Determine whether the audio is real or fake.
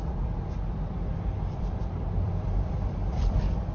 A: fake